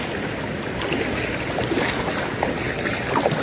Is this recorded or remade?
recorded